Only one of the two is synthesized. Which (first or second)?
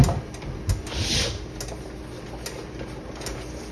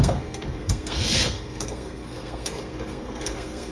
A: second